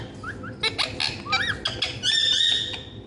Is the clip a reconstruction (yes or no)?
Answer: no